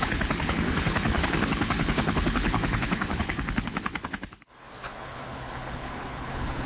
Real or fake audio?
fake